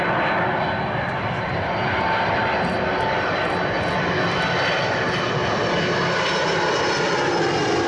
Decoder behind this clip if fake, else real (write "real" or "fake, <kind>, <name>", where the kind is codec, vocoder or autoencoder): real